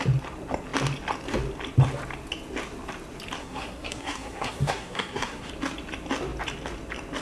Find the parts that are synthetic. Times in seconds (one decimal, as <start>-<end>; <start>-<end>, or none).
3.4-5.5